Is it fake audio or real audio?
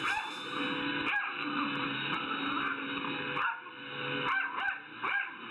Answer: real